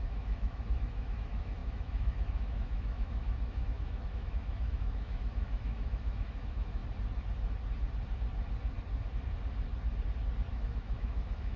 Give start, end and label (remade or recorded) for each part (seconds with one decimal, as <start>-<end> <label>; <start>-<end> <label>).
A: 0.0-6.8 remade; 6.8-10.5 recorded; 10.5-11.6 remade

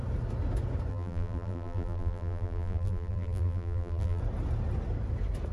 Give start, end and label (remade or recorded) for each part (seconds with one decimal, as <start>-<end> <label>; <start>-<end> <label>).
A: 0.0-0.9 recorded; 0.9-4.2 remade; 4.2-5.5 recorded